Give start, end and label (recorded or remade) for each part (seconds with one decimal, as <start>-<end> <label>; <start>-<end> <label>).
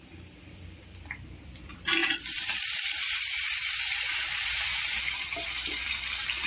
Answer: 0.0-6.5 remade